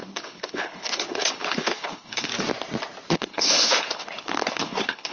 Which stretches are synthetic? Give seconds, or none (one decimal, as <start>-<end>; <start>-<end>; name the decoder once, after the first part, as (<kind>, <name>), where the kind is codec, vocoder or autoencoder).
0.0-2.3 (codec, HILCodec); 3.1-5.1